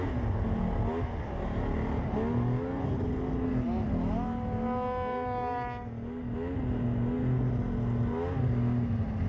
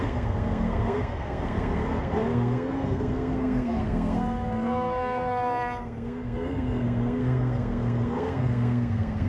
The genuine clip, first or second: first